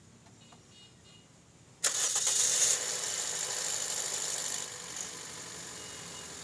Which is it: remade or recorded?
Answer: recorded